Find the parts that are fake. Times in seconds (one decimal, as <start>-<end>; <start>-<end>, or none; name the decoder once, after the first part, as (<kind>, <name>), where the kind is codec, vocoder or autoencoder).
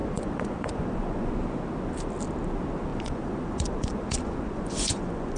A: 0.0-1.3 (vocoder, Vocos); 2.9-5.4